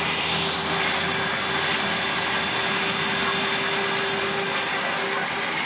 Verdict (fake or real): real